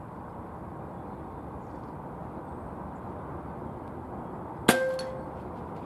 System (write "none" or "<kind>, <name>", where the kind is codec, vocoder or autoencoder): none